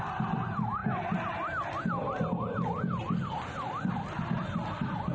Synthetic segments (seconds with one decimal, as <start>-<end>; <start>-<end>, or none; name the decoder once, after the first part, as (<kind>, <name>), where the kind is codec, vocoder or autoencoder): none